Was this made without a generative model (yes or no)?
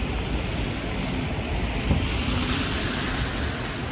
yes